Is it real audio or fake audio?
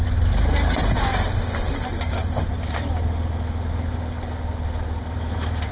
real